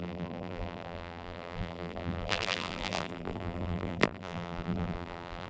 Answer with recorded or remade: remade